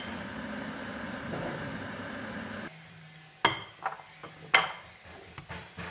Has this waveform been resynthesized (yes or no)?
no